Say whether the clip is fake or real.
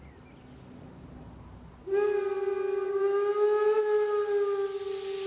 real